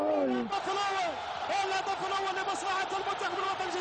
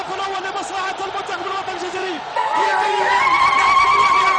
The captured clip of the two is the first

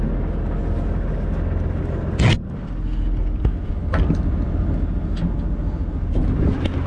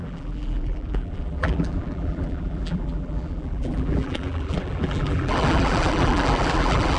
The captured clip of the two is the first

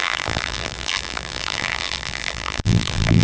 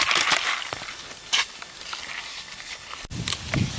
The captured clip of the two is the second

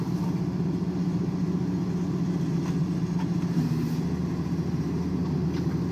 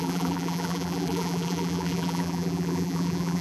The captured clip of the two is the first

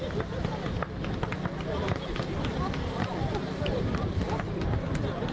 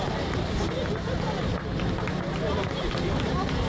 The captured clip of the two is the second